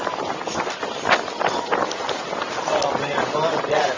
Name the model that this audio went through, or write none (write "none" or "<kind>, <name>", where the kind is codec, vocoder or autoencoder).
none